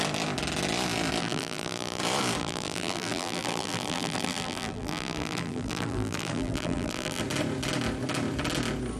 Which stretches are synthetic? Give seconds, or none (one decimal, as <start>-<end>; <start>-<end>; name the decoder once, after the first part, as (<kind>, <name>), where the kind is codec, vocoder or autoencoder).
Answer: 1.2-2.0 (vocoder, BigVGAN v2); 2.4-7.2